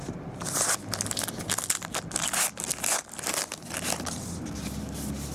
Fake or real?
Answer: real